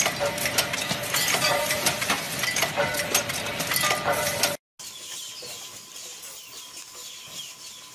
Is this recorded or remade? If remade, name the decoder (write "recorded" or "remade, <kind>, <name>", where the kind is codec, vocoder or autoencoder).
recorded